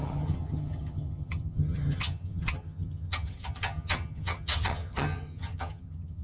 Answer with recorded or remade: remade